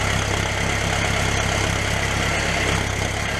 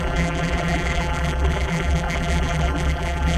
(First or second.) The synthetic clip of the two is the second